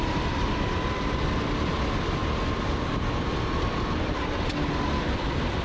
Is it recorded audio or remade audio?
recorded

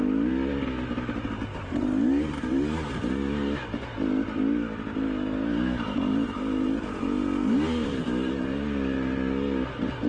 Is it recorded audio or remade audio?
recorded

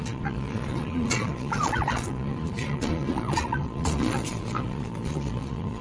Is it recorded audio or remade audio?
remade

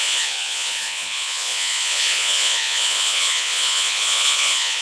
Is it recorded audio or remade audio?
remade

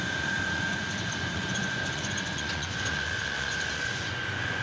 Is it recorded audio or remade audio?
remade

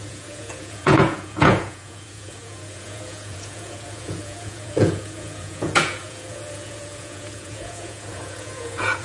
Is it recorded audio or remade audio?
remade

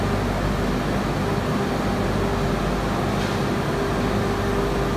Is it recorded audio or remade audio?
recorded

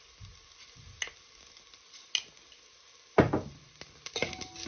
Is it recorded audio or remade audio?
recorded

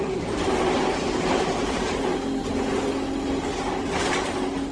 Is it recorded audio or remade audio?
recorded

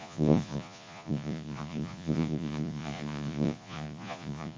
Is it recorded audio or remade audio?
remade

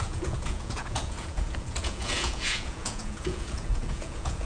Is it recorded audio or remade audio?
remade